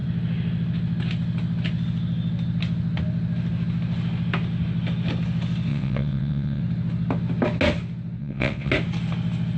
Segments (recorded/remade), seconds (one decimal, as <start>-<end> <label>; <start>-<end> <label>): 0.0-5.7 recorded; 5.7-6.6 remade; 6.6-8.2 recorded; 8.2-8.7 remade; 8.7-9.6 recorded